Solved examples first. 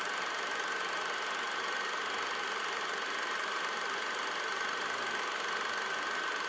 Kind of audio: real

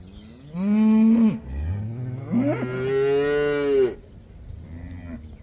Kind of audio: real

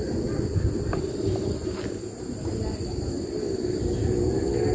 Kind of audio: real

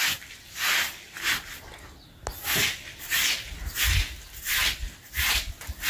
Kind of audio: real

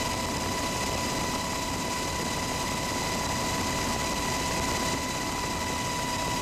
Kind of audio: real